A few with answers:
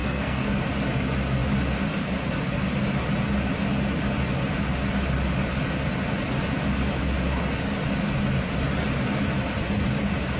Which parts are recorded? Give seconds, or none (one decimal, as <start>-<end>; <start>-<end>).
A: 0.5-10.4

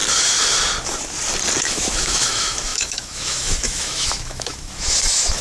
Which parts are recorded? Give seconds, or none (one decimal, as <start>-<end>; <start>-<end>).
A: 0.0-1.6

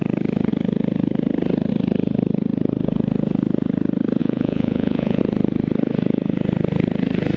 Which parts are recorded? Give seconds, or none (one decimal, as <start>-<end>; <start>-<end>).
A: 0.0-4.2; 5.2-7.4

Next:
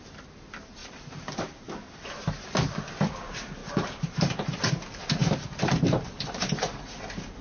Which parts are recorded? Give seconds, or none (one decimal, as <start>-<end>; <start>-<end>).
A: 0.0-0.8; 2.1-3.6; 4.7-5.2